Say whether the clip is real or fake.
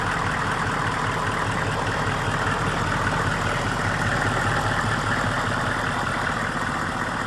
real